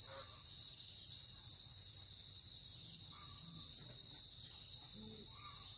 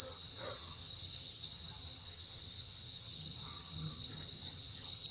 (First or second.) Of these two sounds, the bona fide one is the first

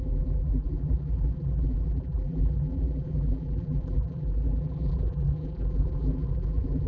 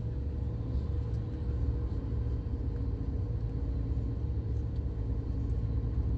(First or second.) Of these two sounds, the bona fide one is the second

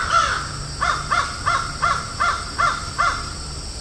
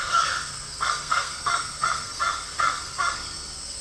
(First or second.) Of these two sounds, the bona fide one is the first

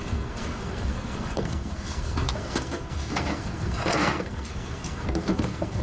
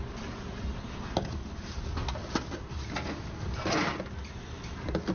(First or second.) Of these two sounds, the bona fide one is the second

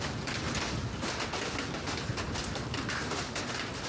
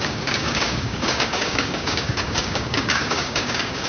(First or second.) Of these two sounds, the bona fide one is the first